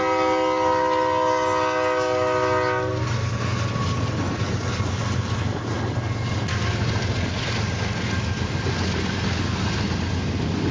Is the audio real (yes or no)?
yes